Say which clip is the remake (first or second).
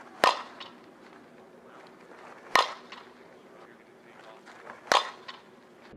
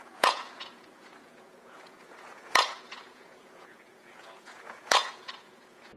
second